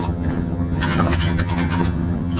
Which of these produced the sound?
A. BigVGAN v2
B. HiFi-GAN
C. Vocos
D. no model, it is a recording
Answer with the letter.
B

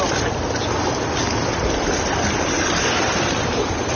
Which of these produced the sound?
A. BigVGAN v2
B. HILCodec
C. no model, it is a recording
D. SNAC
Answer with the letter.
A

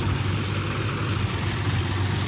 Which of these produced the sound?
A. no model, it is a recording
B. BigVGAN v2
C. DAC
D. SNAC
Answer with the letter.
A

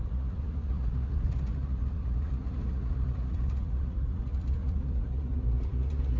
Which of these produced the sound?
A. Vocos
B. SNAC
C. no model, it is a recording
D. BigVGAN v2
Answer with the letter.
A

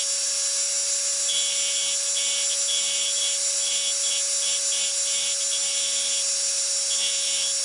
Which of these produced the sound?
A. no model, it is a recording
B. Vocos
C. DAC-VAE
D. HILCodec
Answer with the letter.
A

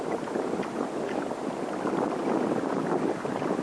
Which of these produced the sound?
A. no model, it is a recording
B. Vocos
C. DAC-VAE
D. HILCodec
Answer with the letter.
A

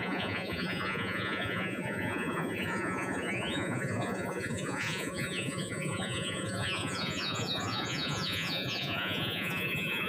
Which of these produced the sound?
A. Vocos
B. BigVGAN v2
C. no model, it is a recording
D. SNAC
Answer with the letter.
A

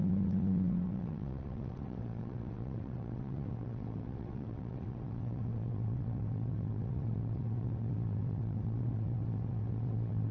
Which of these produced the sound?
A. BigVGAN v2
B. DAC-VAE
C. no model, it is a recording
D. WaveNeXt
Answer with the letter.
D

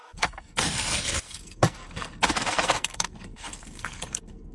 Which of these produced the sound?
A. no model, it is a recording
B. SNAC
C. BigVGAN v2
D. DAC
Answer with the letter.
B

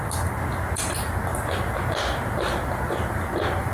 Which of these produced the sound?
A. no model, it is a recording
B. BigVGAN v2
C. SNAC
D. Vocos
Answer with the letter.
A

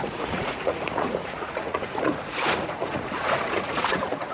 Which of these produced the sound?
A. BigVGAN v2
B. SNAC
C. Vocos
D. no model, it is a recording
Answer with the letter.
C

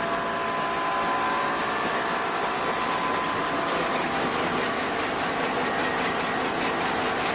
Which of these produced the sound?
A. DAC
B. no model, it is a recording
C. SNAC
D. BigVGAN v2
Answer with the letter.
B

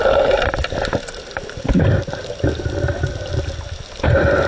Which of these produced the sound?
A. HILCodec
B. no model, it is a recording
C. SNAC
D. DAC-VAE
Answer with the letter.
B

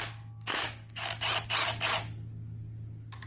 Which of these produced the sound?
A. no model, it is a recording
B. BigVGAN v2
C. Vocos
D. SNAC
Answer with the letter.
A